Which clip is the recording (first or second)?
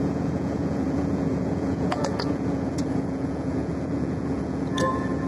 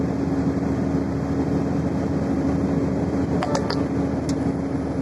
second